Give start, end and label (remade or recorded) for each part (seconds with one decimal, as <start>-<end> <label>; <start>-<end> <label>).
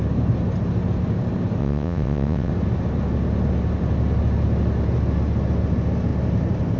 0.0-1.6 recorded; 1.6-2.5 remade; 2.5-6.8 recorded